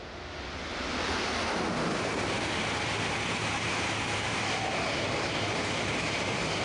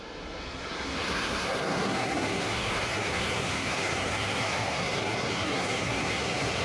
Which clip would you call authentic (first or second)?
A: first